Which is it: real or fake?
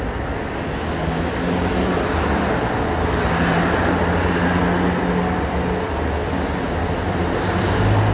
real